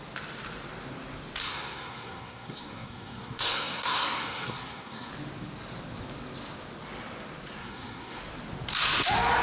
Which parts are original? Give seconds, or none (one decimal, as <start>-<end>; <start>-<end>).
0.0-1.4; 5.1-7.6; 8.2-9.4